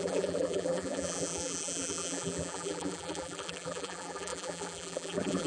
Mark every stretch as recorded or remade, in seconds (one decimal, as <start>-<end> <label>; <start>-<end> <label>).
0.0-5.5 remade